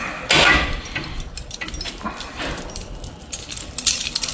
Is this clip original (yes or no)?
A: yes